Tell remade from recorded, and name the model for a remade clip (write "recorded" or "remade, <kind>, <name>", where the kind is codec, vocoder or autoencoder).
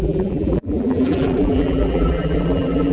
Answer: remade, vocoder, BigVGAN v2